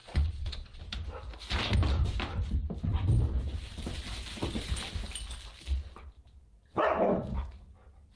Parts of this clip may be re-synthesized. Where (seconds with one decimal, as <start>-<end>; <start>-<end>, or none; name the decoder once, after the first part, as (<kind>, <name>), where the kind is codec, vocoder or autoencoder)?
0.0-0.8 (vocoder, Vocos)